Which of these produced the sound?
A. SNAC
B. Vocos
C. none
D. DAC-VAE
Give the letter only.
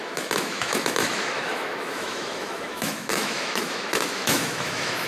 D